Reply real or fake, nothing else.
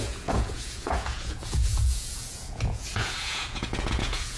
fake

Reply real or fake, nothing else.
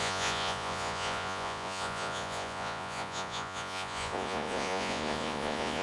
fake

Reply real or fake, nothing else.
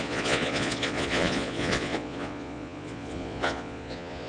fake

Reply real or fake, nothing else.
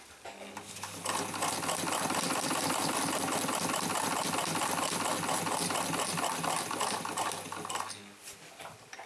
real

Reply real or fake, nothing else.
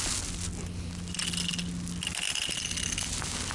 real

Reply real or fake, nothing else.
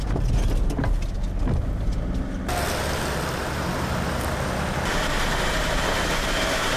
real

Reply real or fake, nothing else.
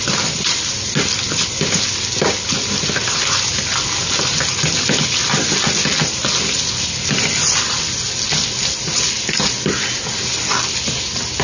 real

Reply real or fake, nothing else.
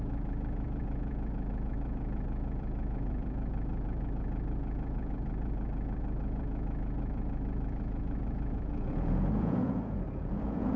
fake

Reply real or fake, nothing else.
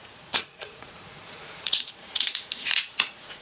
fake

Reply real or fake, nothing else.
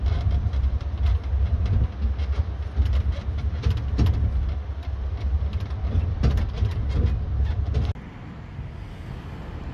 real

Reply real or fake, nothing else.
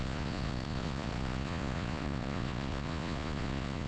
fake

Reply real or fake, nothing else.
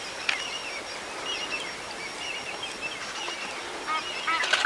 real